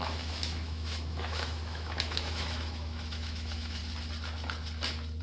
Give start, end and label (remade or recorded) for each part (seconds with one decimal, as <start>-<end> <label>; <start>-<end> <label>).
0.0-3.8 remade; 3.8-5.2 recorded